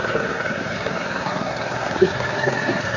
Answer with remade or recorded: remade